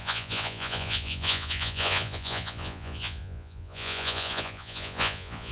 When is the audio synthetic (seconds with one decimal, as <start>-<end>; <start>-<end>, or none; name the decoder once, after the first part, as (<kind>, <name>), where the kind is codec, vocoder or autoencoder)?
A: 0.0-5.5 (vocoder, Vocos)